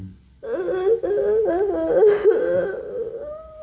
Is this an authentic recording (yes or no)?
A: yes